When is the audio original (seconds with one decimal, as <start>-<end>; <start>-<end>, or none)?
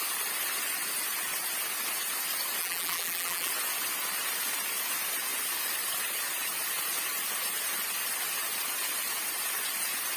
0.0-2.6; 3.5-10.2